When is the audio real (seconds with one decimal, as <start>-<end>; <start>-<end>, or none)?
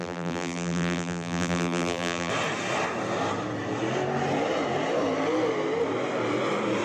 2.3-6.8